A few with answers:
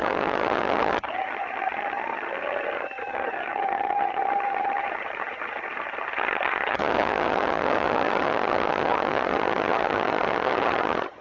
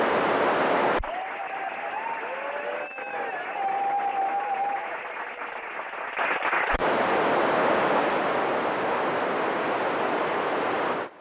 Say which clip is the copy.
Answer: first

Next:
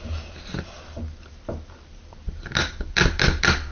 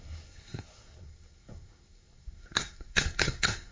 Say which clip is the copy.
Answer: second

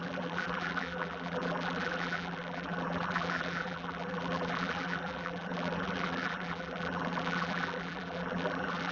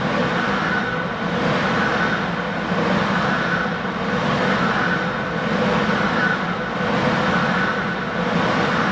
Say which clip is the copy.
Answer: first